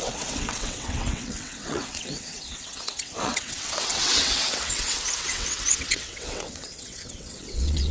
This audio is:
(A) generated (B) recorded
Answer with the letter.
A